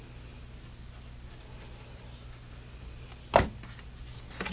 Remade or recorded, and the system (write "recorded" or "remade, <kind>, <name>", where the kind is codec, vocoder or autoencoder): recorded